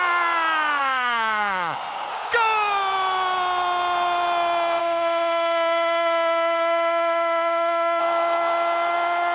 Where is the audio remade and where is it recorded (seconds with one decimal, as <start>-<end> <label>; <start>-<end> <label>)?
0.0-0.8 recorded; 0.8-2.1 remade; 2.1-4.8 recorded; 4.8-8.0 remade; 8.0-9.3 recorded